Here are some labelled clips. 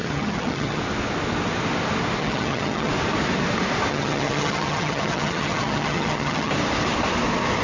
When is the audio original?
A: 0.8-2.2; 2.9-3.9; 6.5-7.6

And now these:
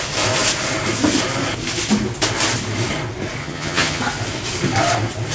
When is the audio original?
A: 0.0-3.4; 4.0-5.3

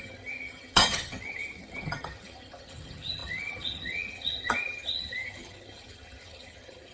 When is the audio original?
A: none

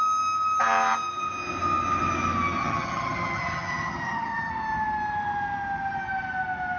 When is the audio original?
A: 0.0-2.6; 4.5-6.8

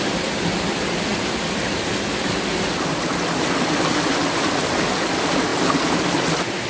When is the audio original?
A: 0.0-6.7

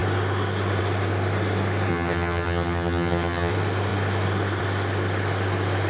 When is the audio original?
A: 0.0-1.9; 3.5-5.9

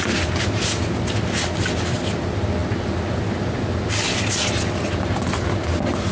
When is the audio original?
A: 0.0-6.1